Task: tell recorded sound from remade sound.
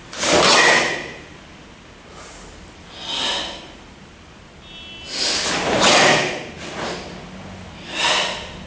recorded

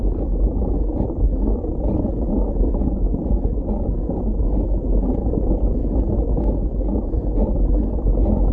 recorded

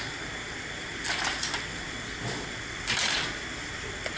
recorded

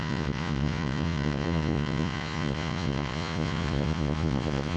remade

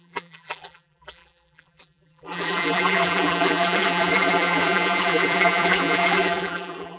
remade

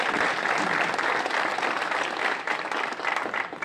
recorded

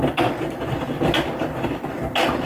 recorded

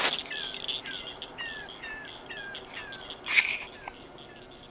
recorded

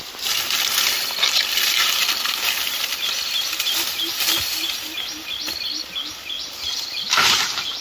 recorded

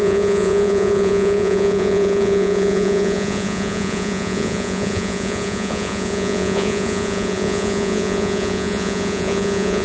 remade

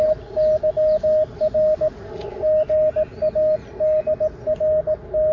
recorded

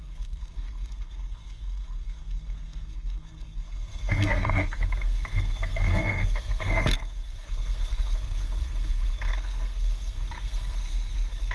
remade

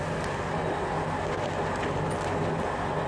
recorded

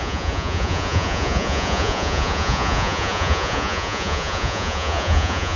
remade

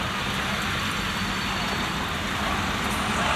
recorded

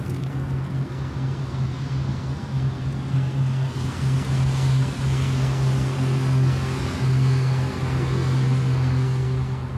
remade